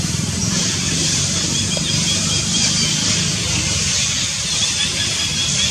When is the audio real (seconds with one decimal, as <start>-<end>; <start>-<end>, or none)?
0.0-5.7